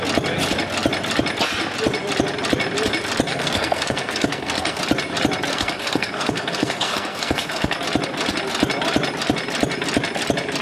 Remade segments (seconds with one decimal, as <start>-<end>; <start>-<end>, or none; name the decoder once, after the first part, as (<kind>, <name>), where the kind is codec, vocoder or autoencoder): 3.3-4.8 (codec, SNAC); 5.5-7.8